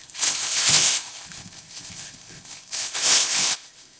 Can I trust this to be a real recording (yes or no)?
no